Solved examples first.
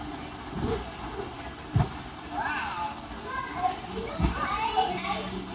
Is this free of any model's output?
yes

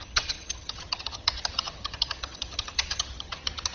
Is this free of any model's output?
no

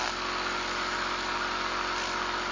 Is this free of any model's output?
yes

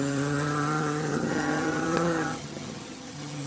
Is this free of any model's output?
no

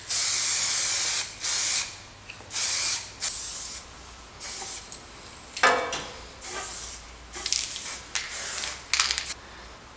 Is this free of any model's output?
yes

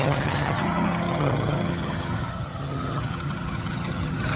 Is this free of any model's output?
no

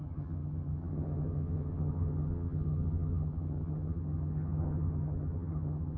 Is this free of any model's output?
no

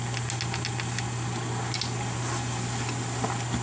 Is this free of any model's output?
yes